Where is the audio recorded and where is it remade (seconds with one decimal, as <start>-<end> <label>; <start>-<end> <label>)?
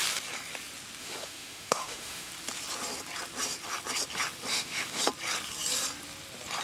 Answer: 0.0-1.0 recorded; 1.0-2.3 remade; 2.3-4.5 recorded; 4.5-5.0 remade; 5.0-6.6 recorded